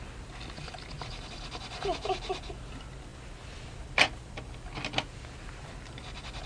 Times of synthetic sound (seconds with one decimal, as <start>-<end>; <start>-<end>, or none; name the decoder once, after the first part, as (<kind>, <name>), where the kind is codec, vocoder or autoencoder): 3.1-3.8 (vocoder, BigVGAN v2)